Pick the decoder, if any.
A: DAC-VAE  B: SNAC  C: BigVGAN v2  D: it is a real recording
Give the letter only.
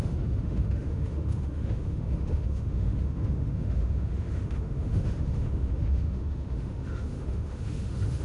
A